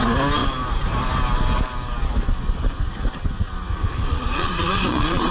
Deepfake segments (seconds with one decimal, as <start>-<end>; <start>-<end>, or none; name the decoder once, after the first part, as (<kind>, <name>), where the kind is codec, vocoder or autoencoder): 4.1-5.3 (vocoder, Vocos)